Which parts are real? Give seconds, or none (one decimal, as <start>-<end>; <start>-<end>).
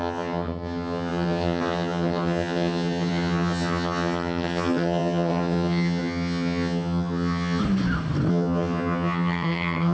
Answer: 7.6-8.3